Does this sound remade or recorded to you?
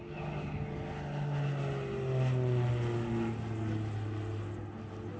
recorded